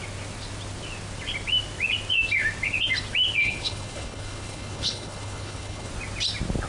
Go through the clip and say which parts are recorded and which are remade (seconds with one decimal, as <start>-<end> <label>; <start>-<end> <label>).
0.0-3.4 recorded; 3.4-5.9 remade; 5.9-6.7 recorded